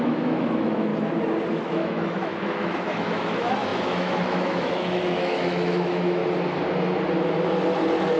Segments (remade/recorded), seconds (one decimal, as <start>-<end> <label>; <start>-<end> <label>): 0.0-0.9 remade; 0.9-1.5 recorded; 1.5-6.2 remade; 6.2-8.2 recorded